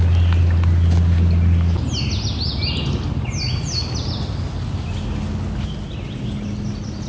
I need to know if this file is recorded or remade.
recorded